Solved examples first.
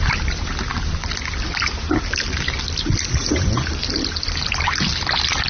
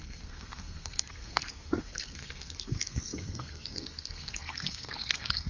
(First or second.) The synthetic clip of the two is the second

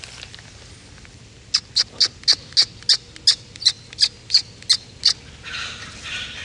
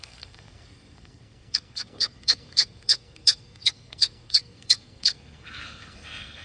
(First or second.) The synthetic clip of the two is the second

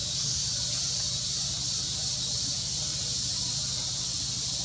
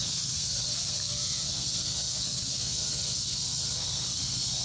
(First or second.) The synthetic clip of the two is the second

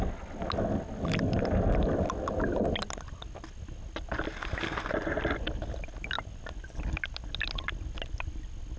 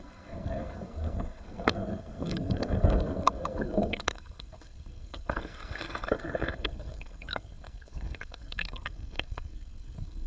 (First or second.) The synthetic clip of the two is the second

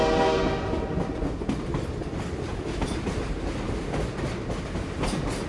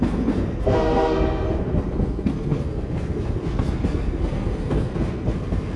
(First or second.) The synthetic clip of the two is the second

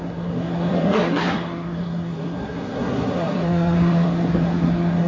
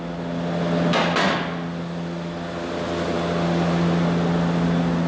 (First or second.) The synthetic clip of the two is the first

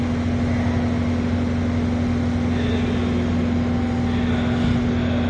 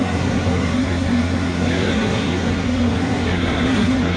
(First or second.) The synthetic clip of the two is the second